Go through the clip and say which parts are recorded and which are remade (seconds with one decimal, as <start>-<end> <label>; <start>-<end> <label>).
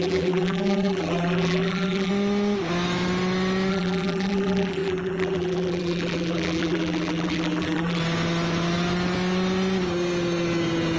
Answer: 0.0-2.1 remade; 2.1-3.7 recorded; 3.7-8.0 remade; 8.0-11.0 recorded